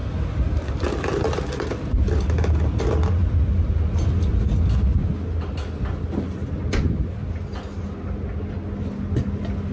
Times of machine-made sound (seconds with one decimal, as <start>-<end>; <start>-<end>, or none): none